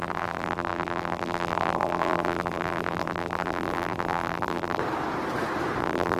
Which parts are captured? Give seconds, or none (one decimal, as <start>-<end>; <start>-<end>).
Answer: 4.8-5.8